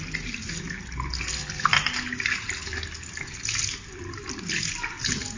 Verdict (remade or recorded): recorded